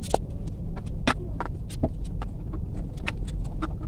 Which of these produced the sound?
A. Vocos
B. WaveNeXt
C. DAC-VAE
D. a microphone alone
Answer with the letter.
D